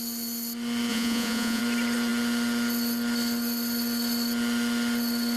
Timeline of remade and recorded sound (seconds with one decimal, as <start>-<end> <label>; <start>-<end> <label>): 0.0-0.9 recorded; 0.9-1.6 remade; 1.6-5.4 recorded